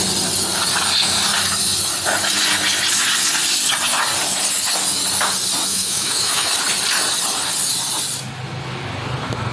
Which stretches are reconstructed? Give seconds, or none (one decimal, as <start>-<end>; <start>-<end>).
5.7-6.5